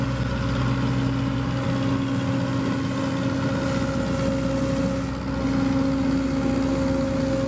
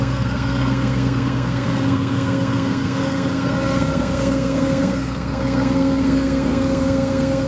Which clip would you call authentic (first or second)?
first